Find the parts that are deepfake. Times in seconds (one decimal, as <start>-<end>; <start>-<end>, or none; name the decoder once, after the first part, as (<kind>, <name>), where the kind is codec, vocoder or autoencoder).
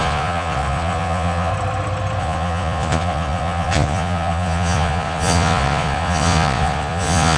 0.0-1.5 (vocoder, Vocos); 2.2-7.4